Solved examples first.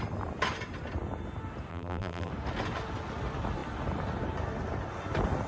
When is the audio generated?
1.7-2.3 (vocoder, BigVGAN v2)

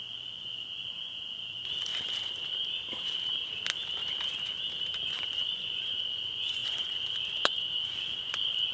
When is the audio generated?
0.0-1.9 (vocoder, Vocos); 5.0-8.7

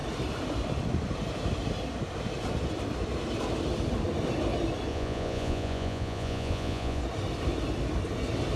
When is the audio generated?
4.9-7.0 (vocoder, Vocos)

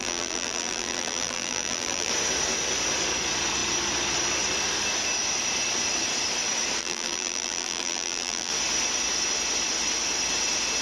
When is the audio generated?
0.0-2.1 (vocoder, BigVGAN v2); 6.8-8.5

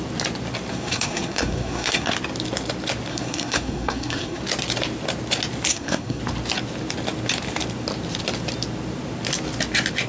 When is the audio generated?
0.7-2.1 (codec, SNAC); 3.1-4.4; 5.7-6.2